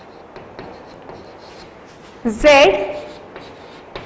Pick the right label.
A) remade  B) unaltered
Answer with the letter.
B